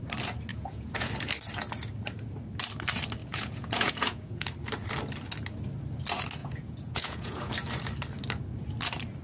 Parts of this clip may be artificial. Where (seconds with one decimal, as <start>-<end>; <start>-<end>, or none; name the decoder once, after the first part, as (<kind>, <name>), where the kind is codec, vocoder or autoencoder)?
0.5-1.1 (vocoder, Vocos); 3.2-4.5; 6.4-7.5